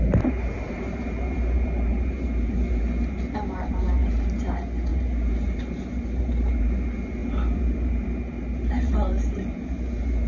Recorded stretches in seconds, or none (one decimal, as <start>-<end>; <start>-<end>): none